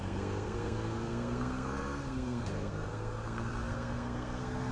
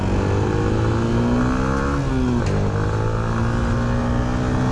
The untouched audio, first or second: second